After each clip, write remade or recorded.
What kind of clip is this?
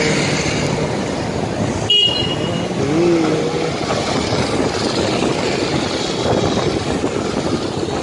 recorded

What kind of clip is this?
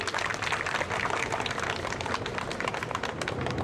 recorded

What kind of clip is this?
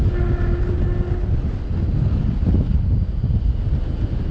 recorded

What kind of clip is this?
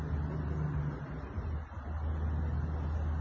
recorded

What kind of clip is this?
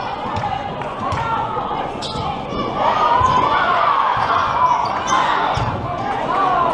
remade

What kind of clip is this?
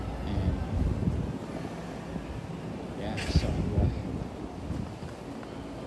recorded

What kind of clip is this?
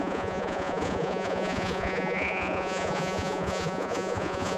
remade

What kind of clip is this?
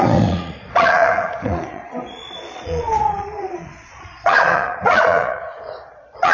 remade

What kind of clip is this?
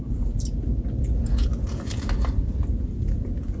recorded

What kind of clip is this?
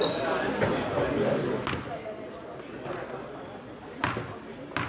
recorded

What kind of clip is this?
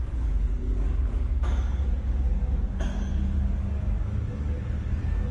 remade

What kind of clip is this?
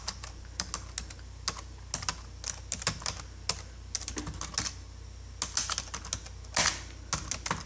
recorded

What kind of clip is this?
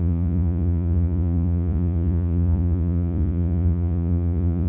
remade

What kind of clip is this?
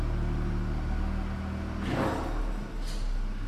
recorded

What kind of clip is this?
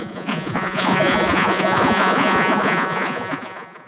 remade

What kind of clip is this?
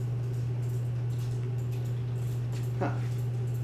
recorded